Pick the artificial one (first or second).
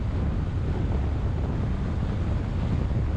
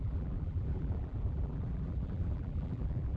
second